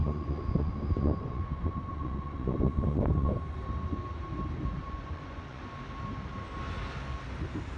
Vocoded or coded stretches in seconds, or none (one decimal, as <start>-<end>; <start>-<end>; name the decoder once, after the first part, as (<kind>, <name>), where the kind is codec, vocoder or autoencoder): 0.0-3.3 (vocoder, Vocos); 4.8-5.6

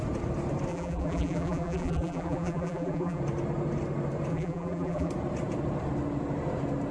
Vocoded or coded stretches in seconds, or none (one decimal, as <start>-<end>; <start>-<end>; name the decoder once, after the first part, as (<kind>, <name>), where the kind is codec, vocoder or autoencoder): 0.7-3.2 (vocoder, BigVGAN v2); 4.3-5.1

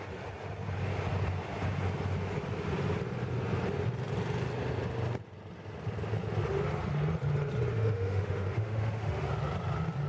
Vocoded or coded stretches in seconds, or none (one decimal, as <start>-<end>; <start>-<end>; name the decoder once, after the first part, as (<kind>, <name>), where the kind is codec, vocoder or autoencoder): 7.7-9.3 (autoencoder, DAC-VAE)

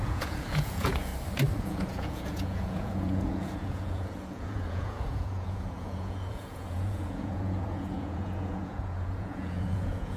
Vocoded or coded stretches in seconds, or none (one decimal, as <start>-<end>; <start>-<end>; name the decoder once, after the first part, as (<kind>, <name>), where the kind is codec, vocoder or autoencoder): 0.0-1.1 (vocoder, Vocos); 1.6-10.2

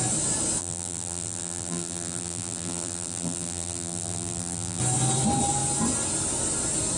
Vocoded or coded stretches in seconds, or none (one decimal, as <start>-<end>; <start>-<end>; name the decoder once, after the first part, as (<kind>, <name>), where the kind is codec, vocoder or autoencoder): 0.6-4.8 (vocoder, BigVGAN v2)

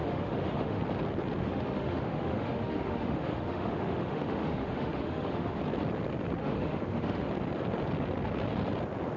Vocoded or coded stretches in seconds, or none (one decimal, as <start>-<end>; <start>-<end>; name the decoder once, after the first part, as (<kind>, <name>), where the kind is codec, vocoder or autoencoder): 0.0-0.8 (autoencoder, DAC-VAE); 1.4-5.6; 6.4-7.3